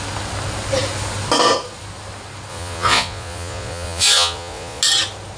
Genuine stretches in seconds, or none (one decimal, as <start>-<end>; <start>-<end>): 0.0-2.5; 4.8-5.4